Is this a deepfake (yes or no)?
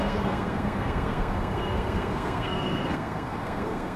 yes